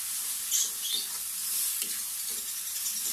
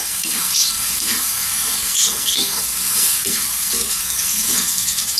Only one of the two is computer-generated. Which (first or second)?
second